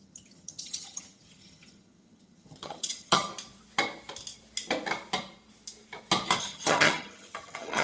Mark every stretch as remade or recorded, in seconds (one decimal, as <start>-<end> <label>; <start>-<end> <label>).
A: 0.0-3.3 remade; 3.3-6.4 recorded; 6.4-7.8 remade